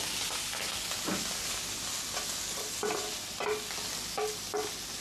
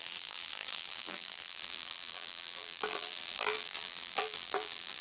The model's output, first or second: second